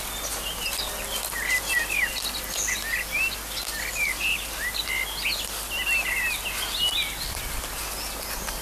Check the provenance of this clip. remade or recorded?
recorded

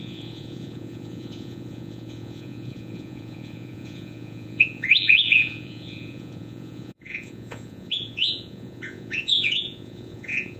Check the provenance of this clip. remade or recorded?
remade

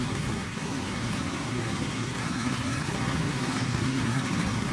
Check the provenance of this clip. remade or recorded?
remade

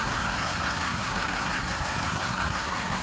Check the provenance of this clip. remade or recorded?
remade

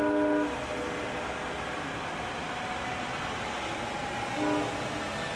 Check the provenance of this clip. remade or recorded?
recorded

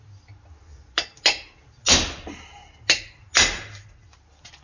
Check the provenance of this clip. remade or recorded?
recorded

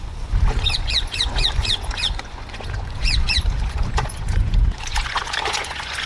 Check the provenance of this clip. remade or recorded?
remade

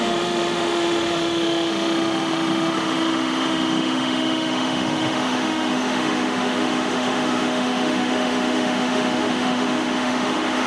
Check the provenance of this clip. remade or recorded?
remade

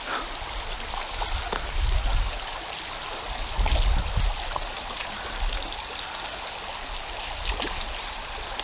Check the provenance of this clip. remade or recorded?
recorded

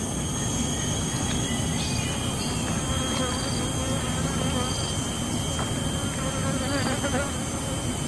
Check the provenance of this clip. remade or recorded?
recorded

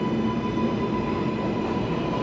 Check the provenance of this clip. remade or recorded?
recorded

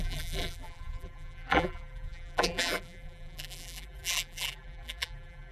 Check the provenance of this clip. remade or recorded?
remade